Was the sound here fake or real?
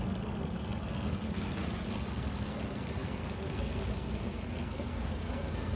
fake